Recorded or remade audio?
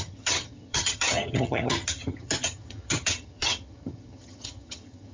remade